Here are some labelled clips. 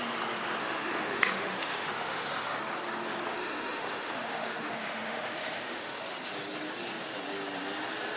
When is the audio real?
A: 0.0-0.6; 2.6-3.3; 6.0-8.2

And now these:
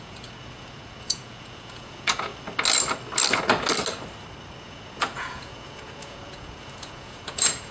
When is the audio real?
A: 2.3-4.6